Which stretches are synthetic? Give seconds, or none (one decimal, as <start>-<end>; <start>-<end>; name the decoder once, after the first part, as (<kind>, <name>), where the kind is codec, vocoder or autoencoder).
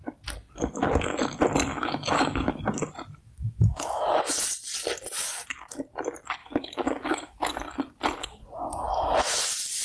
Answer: 1.7-2.6 (autoencoder, DAC-VAE); 3.2-4.2; 6.4-7.5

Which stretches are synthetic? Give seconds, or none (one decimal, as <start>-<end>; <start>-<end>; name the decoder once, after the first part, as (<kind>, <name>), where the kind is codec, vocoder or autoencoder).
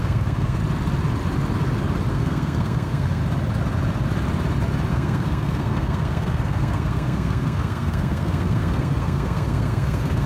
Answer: 0.0-0.6 (codec, SNAC); 2.1-3.2; 4.9-10.3